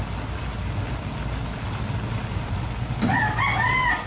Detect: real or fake real